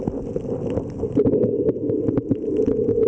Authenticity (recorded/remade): recorded